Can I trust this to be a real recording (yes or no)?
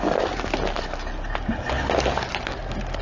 yes